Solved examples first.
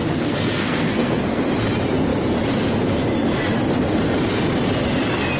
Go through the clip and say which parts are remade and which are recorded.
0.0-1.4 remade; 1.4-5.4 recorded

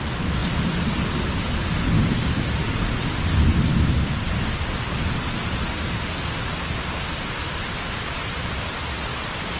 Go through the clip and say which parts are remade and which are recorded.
0.0-9.6 recorded

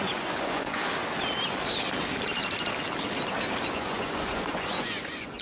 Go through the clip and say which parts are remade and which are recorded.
0.0-0.8 remade; 0.8-3.7 recorded; 3.7-5.4 remade

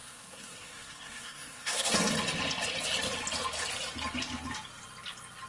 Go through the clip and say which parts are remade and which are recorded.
0.0-1.9 remade; 1.9-5.5 recorded

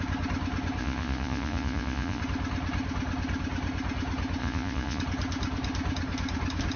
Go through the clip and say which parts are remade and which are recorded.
0.0-0.8 recorded; 0.8-2.2 remade; 2.2-4.4 recorded; 4.4-5.0 remade; 5.0-6.8 recorded